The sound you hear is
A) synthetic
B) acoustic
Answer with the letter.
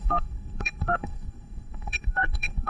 A